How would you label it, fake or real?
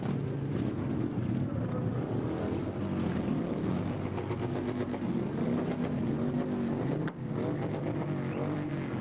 real